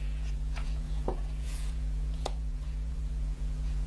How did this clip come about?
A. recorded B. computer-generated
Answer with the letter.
B